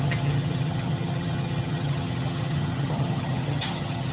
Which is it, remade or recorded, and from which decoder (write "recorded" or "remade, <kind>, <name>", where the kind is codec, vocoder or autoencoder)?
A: remade, vocoder, HiFi-GAN